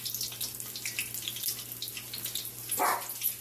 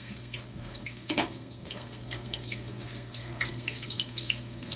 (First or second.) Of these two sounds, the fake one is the second